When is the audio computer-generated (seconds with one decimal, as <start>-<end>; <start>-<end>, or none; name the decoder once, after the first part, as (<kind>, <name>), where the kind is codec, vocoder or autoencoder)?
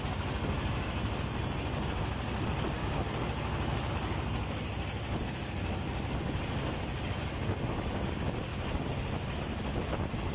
none